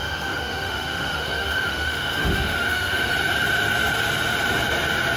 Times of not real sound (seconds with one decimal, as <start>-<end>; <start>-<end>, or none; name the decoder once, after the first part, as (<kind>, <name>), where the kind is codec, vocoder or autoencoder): 0.0-3.1 (autoencoder, DAC-VAE)

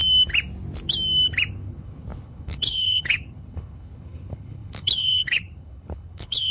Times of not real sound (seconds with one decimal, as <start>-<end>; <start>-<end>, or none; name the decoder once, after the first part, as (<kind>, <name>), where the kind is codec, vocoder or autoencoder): 1.5-6.5 (codec, HILCodec)

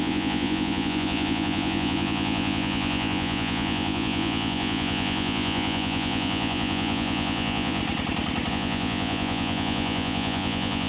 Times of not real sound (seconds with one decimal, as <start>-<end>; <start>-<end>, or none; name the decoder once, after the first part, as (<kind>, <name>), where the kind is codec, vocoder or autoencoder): 0.0-7.8 (vocoder, Vocos); 8.5-10.9

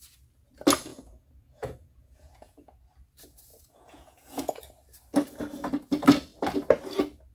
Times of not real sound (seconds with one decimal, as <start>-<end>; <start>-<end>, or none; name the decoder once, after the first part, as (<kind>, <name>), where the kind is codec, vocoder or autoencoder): 0.9-2.8 (vocoder, Vocos); 3.5-4.6

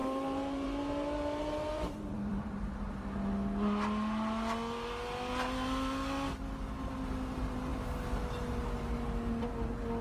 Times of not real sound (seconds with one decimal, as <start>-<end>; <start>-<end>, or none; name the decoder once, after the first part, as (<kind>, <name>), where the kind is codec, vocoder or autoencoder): 0.0-2.7 (vocoder, BigVGAN v2)

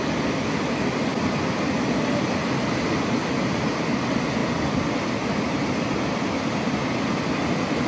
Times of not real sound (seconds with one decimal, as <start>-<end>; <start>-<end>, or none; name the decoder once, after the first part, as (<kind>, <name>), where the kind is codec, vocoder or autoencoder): none